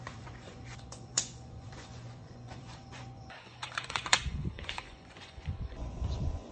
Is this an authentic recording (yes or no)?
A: no